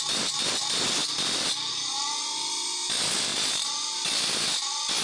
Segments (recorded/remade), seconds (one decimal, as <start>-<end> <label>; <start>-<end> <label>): 0.0-1.0 recorded; 1.0-1.7 remade; 1.7-5.0 recorded

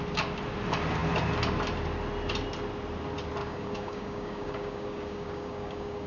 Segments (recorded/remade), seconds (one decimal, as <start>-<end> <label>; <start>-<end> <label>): 0.0-3.4 recorded; 3.4-6.1 remade

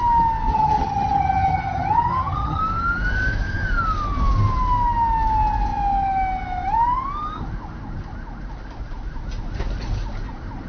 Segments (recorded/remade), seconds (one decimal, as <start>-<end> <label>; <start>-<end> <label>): 0.0-0.5 recorded; 0.5-2.6 remade; 2.6-10.7 recorded

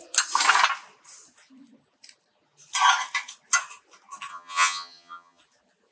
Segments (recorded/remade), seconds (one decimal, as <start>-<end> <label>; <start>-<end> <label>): 0.0-4.3 recorded; 4.3-5.4 remade; 5.4-5.9 recorded

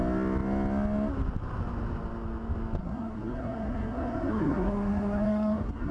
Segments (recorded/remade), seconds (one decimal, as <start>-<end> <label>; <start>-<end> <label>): 0.0-2.8 recorded; 2.8-5.9 remade